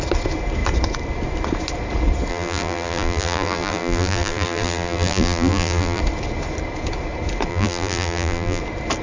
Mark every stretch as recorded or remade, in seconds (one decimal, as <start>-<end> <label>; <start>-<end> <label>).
0.0-2.3 recorded; 2.3-6.0 remade; 6.0-7.5 recorded; 7.5-8.6 remade; 8.6-9.0 recorded